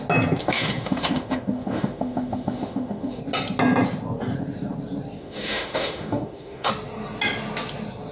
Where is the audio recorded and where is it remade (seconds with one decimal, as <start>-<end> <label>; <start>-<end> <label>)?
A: 0.0-0.4 recorded; 0.4-3.2 remade; 3.2-5.2 recorded; 5.2-6.7 remade; 6.7-8.1 recorded